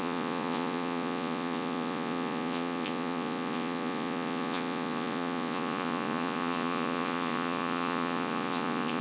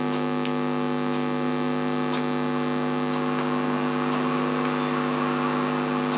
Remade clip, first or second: first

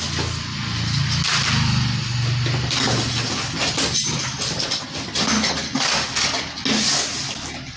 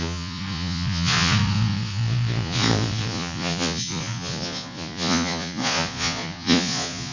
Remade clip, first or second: second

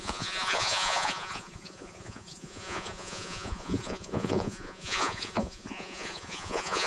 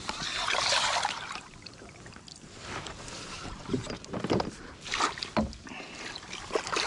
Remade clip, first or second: first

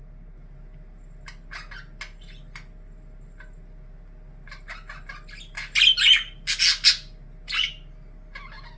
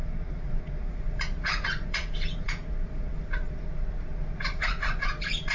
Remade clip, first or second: second